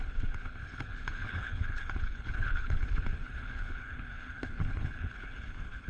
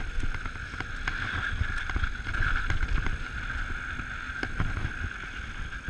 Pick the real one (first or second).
second